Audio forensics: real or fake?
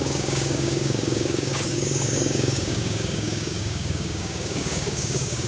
fake